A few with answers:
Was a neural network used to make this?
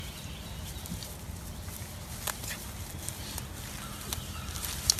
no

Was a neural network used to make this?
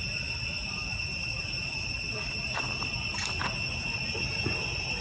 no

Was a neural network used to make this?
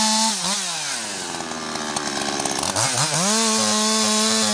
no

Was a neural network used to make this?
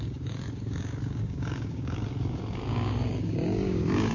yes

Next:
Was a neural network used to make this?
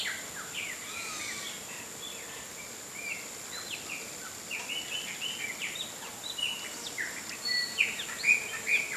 no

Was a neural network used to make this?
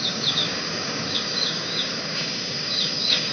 yes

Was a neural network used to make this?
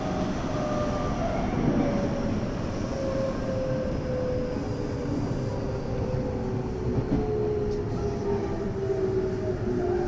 no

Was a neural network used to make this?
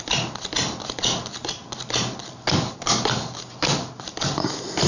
no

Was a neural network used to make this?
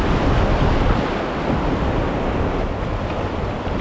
no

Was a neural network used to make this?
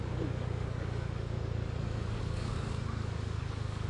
yes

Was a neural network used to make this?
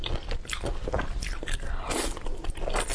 no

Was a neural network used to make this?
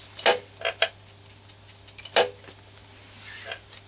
no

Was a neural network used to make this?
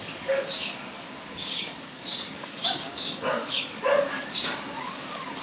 yes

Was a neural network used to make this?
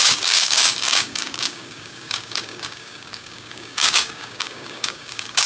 yes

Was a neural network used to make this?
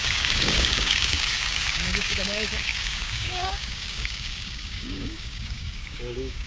yes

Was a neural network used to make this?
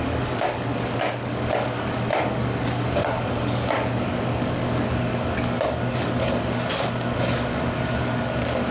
yes